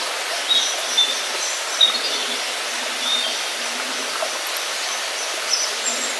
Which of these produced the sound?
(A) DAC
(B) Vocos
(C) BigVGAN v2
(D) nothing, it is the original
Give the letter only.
D